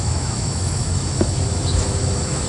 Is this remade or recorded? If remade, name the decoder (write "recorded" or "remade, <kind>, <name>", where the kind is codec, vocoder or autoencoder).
remade, autoencoder, DAC-VAE